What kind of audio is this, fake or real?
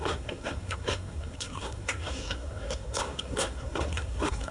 fake